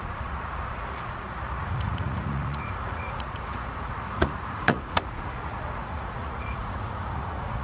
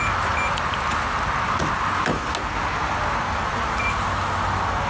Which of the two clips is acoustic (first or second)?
second